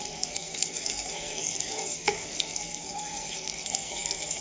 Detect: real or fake fake